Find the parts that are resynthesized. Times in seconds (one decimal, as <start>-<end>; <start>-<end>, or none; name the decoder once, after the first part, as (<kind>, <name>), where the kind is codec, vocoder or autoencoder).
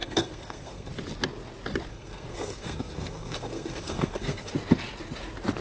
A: 0.0-0.9 (codec, SNAC); 1.9-4.5